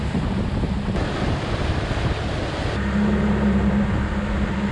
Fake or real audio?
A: real